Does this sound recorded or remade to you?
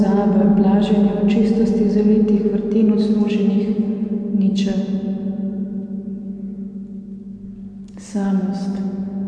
recorded